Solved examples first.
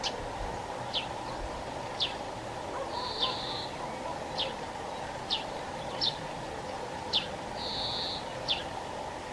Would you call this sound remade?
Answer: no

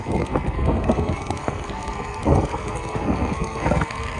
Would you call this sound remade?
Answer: yes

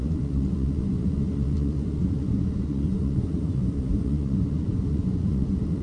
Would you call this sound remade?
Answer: yes